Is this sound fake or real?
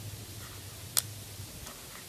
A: real